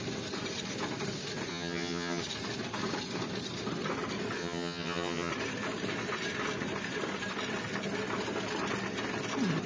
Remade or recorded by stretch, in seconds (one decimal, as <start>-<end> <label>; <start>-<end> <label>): 0.0-1.5 recorded; 1.5-2.2 remade; 2.2-4.4 recorded; 4.4-5.3 remade; 5.3-9.7 recorded